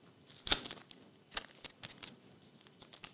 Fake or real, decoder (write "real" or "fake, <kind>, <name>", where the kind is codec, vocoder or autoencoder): real